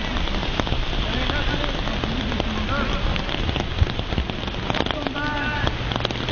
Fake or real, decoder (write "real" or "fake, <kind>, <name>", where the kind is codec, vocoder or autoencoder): real